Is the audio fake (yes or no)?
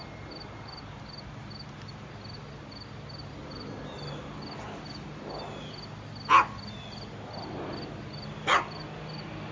no